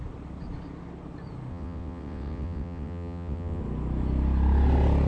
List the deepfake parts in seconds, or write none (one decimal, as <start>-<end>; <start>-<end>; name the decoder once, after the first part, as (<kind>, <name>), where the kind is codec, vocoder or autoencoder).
1.5-3.6 (vocoder, WaveNeXt)